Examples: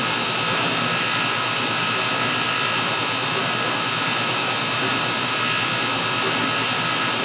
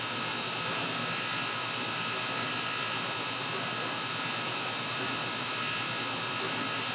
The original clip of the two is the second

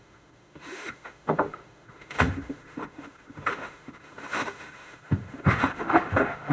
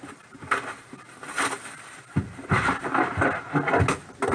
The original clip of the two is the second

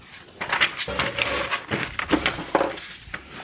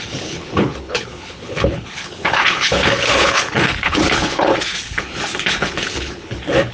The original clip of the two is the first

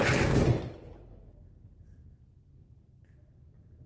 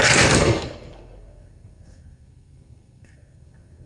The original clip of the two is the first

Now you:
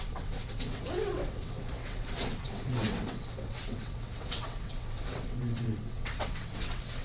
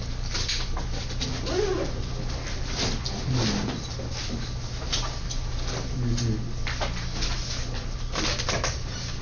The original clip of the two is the second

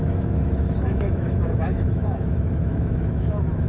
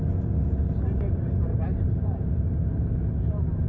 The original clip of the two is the second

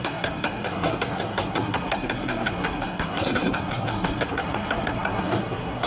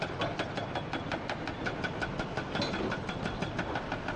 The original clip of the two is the second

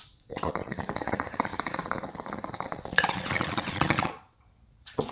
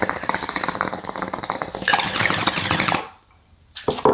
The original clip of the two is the second